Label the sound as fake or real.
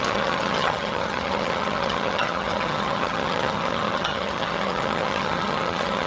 fake